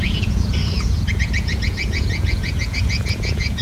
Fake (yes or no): yes